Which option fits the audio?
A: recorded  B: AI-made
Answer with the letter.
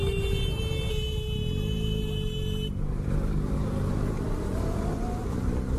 A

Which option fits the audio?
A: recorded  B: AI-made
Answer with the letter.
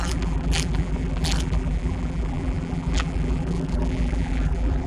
B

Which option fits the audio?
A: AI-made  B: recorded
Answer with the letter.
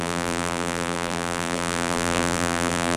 A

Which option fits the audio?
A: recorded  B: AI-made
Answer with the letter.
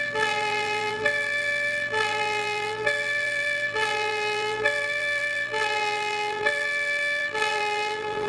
B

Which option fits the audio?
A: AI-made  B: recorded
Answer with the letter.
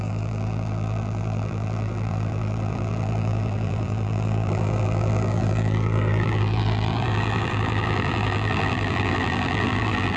A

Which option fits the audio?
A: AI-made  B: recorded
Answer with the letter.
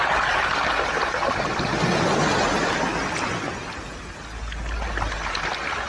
B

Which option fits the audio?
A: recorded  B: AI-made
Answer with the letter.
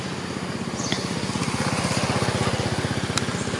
A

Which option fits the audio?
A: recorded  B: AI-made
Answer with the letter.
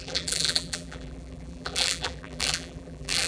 B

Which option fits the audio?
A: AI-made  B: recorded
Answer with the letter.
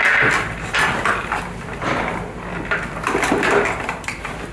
B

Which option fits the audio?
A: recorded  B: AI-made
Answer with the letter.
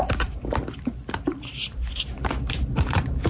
B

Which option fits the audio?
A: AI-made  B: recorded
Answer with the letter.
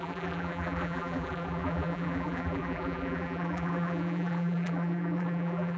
A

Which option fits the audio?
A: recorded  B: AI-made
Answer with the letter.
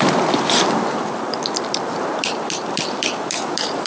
B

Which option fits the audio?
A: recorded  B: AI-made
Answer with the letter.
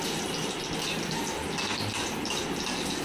A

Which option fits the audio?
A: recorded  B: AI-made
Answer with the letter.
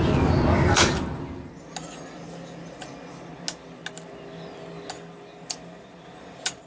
A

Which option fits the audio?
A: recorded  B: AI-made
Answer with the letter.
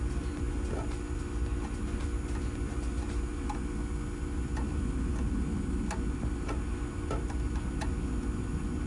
A